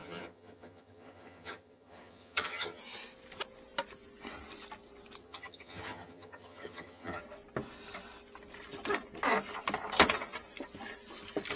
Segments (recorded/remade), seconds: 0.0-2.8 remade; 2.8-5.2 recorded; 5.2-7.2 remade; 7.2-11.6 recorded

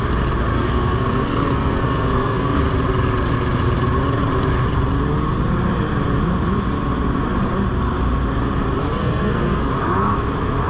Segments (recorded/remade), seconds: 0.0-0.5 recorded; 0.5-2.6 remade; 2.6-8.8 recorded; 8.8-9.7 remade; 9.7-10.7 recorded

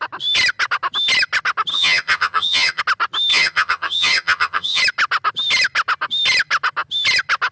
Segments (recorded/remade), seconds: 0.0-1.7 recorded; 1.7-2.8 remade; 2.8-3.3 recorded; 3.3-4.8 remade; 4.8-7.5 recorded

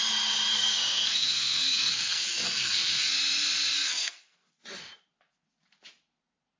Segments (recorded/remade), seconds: 0.0-0.5 recorded; 0.5-3.1 remade; 3.1-3.7 recorded; 3.7-4.5 remade; 4.5-6.6 recorded

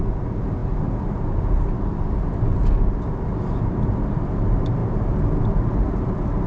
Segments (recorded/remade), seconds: 0.0-6.5 recorded

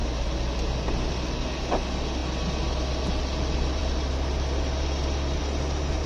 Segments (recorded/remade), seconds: 0.0-6.1 recorded